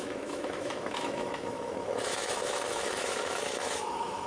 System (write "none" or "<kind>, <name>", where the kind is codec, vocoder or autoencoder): autoencoder, DAC-VAE